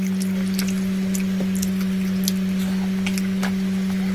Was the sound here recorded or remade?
recorded